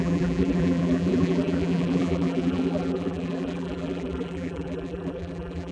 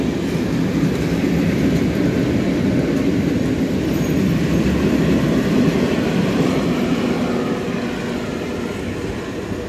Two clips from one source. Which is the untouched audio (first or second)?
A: second